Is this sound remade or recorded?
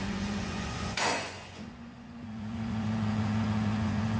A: remade